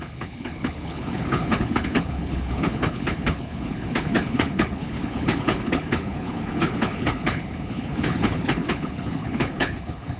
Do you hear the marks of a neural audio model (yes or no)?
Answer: yes